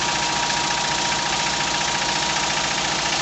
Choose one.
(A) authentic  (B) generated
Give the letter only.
A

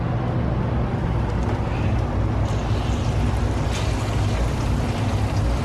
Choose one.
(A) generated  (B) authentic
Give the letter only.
B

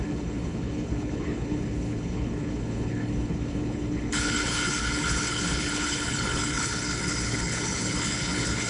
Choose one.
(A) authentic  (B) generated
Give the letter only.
B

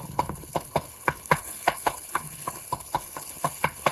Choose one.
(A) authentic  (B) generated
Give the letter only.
B